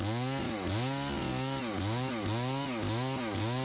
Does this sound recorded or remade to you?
recorded